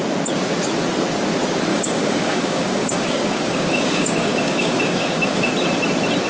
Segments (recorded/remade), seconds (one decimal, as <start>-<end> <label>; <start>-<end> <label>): 0.0-1.7 recorded; 1.7-5.5 remade; 5.5-6.3 recorded